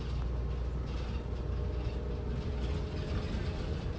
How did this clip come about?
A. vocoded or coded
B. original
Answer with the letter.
B